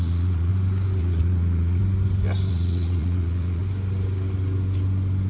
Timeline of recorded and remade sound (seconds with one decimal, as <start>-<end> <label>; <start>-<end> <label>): 0.0-0.5 remade; 0.5-1.0 recorded; 1.0-1.8 remade; 1.8-2.5 recorded; 2.5-3.6 remade; 3.6-5.3 recorded